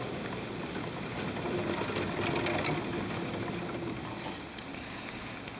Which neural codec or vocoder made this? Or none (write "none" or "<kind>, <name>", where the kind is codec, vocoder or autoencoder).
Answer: none